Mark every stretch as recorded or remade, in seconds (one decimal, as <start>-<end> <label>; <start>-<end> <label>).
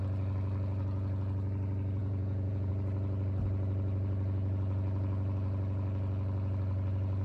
0.0-2.0 recorded; 2.0-2.7 remade; 2.7-7.2 recorded